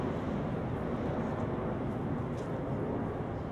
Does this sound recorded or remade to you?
recorded